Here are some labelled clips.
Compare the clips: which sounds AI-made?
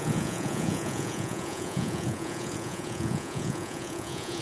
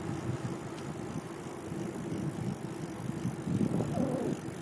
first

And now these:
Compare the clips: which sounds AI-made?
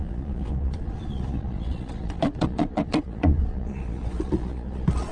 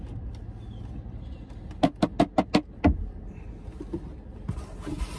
first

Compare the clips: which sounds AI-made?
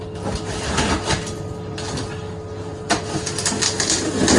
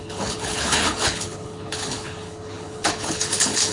second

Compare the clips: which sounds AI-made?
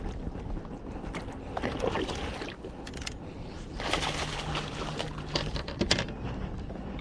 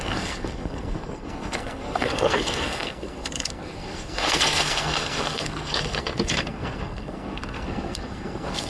second